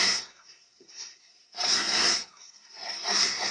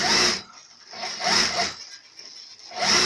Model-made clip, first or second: first